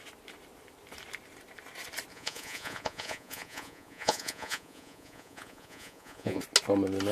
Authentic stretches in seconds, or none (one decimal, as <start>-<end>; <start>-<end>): 0.0-2.1; 6.4-7.1